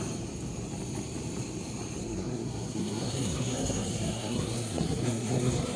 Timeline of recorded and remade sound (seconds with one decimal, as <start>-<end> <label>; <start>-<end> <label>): 0.0-2.0 recorded; 2.0-5.8 remade